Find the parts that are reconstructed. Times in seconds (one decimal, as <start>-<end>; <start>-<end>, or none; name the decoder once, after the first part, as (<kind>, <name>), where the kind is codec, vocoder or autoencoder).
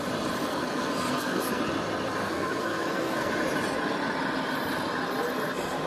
0.5-1.6 (codec, SNAC); 2.2-3.3